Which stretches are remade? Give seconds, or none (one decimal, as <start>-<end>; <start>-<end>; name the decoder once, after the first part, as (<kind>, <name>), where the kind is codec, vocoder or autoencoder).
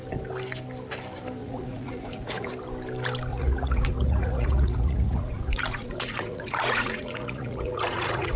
1.4-2.5 (vocoder, Vocos); 3.3-8.4